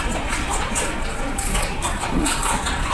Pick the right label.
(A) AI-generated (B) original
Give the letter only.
A